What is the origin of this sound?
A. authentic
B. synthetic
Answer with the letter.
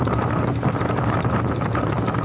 B